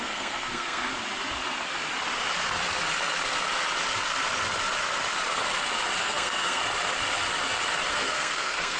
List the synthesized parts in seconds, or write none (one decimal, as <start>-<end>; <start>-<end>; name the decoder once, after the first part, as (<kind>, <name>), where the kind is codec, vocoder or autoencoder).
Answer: 0.0-0.9 (codec, SNAC); 6.0-6.6; 7.9-8.8